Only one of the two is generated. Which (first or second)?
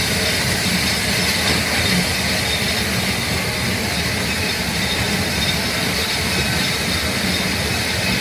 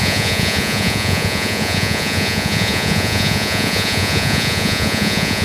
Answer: second